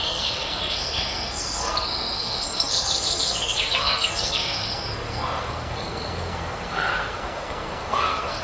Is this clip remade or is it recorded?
remade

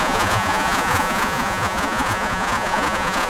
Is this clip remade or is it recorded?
remade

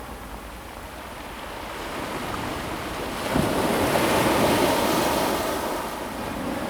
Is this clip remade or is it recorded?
recorded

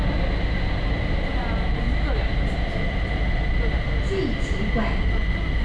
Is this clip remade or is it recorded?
recorded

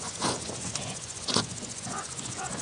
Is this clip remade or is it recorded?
remade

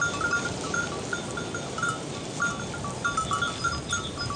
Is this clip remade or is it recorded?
recorded